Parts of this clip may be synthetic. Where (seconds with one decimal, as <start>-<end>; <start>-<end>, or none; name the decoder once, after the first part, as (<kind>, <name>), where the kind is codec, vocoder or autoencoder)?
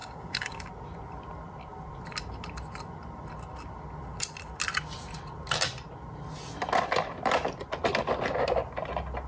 0.0-0.7 (codec, DAC)